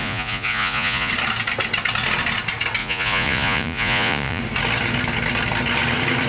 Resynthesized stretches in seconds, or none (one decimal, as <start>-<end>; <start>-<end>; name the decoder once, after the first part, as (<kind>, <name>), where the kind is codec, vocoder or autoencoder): 0.0-1.1 (vocoder, Vocos); 2.8-4.4